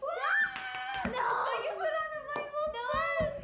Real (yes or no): yes